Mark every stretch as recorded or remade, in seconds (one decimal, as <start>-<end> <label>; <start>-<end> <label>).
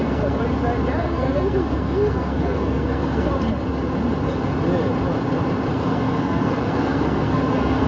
0.0-0.4 remade; 0.4-1.0 recorded; 1.0-3.3 remade; 3.3-5.7 recorded; 5.7-7.9 remade